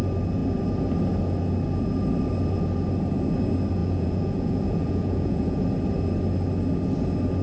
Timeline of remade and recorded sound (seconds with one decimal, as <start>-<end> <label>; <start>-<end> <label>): 0.0-3.8 recorded; 3.8-5.6 remade; 5.6-7.4 recorded